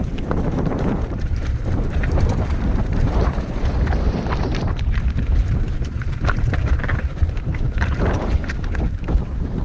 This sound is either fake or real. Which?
fake